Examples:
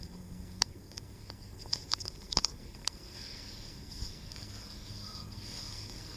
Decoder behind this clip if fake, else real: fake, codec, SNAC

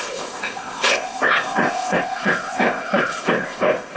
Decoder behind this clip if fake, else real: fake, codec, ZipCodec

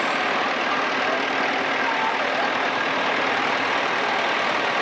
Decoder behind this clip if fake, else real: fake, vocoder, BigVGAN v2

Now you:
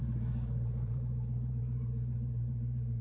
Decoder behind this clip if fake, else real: fake, vocoder, BigVGAN v2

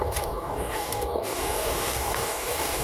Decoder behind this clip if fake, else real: fake, codec, DAC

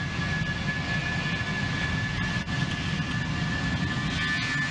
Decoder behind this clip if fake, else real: real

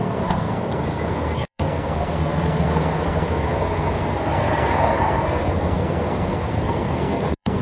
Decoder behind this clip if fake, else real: fake, codec, SNAC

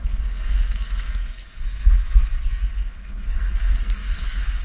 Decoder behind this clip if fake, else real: fake, codec, SNAC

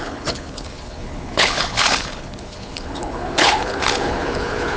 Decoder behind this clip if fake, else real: fake, codec, HILCodec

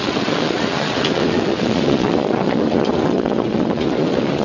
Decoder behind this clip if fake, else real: fake, vocoder, Vocos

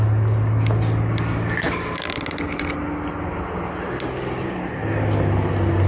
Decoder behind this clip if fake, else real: real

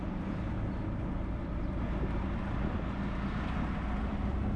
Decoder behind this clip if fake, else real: fake, vocoder, BigVGAN v2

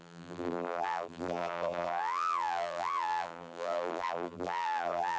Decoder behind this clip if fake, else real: fake, vocoder, BigVGAN v2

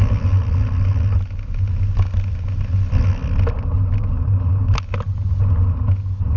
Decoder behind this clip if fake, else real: real